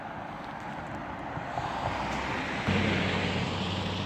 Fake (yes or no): no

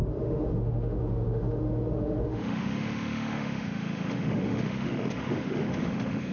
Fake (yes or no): yes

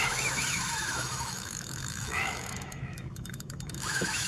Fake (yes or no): yes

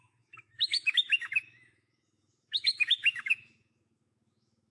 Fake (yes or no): yes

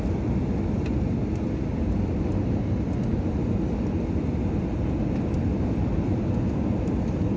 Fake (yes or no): no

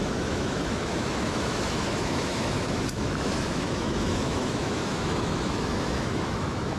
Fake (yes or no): yes